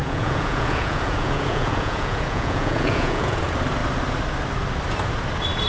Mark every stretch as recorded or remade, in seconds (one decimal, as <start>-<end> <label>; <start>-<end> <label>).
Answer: 0.0-3.4 remade; 3.4-5.7 recorded